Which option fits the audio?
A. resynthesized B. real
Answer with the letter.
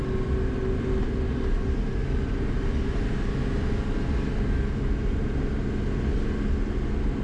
B